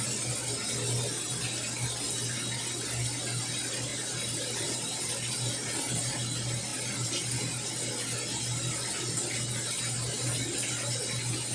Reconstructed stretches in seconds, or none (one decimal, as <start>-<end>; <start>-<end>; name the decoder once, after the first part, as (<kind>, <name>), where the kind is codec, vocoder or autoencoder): 3.9-5.1 (vocoder, BigVGAN v2)

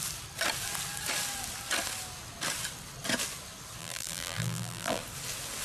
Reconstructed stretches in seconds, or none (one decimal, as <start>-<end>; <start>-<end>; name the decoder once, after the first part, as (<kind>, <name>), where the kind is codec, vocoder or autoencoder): 3.8-5.0 (vocoder, BigVGAN v2)

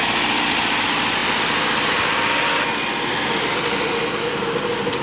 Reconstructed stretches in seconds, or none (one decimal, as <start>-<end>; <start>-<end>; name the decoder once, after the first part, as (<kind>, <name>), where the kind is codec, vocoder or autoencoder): none

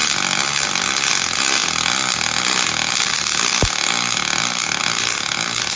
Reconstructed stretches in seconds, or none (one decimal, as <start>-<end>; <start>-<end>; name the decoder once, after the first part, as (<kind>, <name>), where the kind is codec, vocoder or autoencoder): none